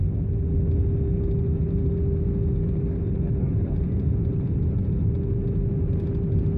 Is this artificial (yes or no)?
no